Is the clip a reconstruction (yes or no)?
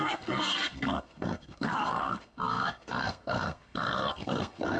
yes